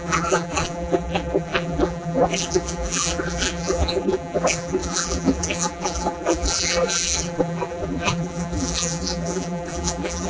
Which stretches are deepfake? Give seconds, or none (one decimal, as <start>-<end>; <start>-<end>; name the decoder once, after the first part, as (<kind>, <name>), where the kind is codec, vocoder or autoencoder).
0.0-10.3 (vocoder, BigVGAN v2)